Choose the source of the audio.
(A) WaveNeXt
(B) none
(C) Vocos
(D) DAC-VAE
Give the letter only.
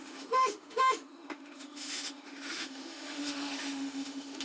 D